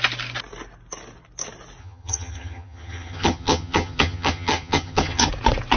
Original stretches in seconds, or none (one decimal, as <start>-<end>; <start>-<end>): 0.0-1.8; 5.3-5.8